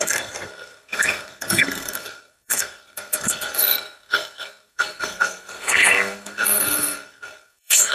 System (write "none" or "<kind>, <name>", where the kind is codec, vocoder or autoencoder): codec, SNAC